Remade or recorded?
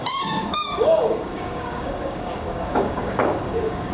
remade